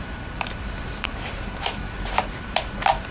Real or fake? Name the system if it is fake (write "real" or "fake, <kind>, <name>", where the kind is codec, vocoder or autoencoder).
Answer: fake, vocoder, BigVGAN v2